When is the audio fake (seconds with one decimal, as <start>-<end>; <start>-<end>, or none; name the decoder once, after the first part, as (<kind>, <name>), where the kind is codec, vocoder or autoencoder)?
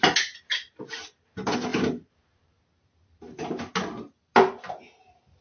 1.7-2.6 (vocoder, BigVGAN v2)